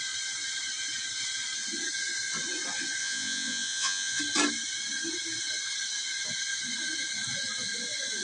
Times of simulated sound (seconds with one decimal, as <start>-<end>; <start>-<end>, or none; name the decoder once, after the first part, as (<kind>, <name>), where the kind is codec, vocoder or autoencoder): 3.0-4.2 (vocoder, Vocos)